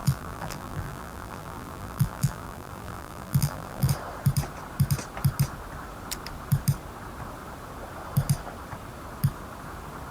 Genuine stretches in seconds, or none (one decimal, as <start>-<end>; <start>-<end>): 3.9-10.1